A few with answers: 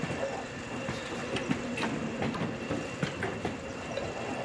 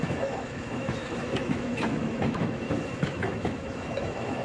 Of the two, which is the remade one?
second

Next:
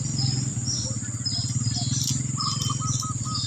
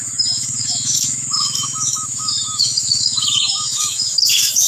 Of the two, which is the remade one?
second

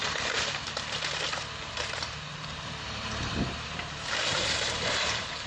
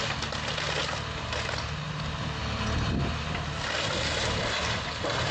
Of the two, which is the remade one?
first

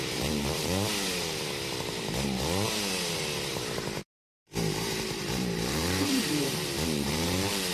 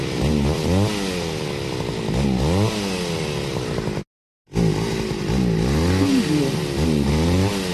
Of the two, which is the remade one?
first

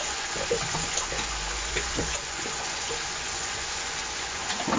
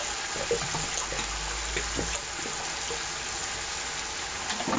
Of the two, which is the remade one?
first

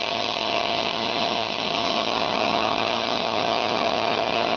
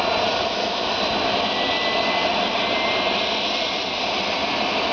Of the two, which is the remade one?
first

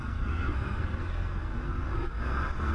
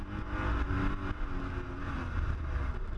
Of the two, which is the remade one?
first